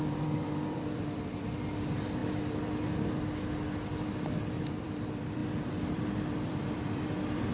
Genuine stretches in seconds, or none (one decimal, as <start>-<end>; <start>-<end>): 2.2-4.7; 5.4-5.9